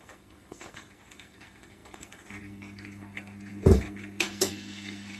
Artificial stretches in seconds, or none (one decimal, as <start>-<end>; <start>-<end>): 0.0-5.2